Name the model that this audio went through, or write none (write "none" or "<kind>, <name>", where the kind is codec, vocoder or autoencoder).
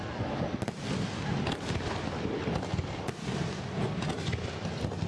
none